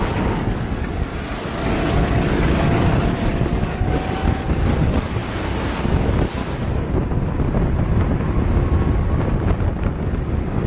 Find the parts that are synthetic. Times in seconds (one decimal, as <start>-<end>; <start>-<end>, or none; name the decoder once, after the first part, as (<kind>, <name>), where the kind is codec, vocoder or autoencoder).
0.0-1.1 (codec, DAC); 2.2-5.2; 5.8-6.4; 10.0-10.7